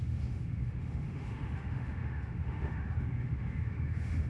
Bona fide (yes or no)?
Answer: no